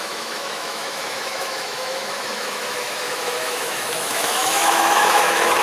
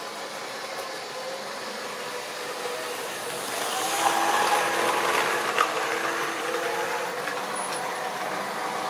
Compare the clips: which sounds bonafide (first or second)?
second